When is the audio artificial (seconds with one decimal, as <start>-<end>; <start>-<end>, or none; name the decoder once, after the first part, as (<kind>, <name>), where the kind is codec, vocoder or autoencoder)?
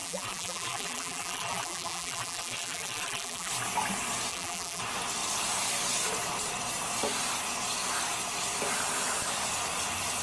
0.0-3.5 (vocoder, BigVGAN v2); 4.3-4.8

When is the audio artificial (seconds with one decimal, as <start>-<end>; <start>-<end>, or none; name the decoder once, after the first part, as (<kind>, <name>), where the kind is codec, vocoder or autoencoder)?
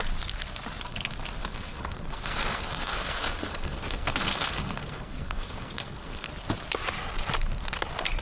1.4-6.3 (codec, SNAC)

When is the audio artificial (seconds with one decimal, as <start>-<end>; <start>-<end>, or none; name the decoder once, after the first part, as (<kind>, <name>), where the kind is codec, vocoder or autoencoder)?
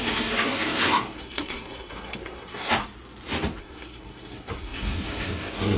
0.0-2.8 (codec, SNAC); 3.6-5.8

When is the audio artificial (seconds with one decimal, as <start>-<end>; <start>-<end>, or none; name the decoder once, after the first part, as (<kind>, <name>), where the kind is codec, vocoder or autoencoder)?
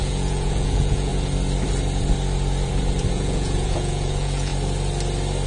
0.0-1.1 (vocoder, Vocos); 3.1-4.5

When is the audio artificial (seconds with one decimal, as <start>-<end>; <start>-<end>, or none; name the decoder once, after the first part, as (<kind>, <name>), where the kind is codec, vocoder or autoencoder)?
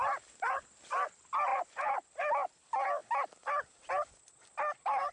1.5-2.1 (vocoder, Vocos)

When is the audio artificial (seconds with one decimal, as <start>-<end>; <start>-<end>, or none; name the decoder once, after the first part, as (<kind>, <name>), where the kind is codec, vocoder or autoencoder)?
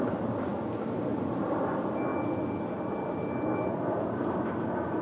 none